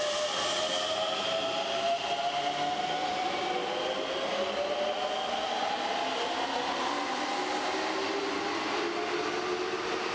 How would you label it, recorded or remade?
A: recorded